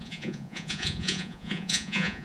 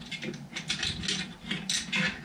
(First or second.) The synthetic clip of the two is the first